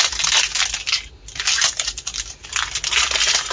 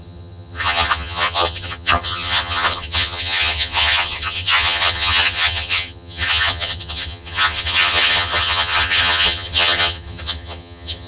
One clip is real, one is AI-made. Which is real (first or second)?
first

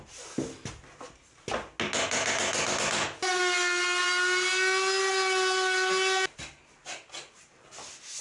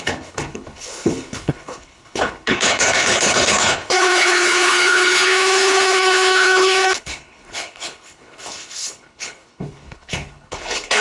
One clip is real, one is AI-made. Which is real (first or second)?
first